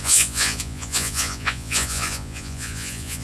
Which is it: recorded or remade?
remade